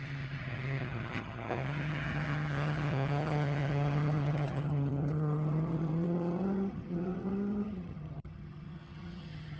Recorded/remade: remade